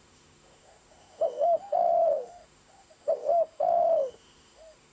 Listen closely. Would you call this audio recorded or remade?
remade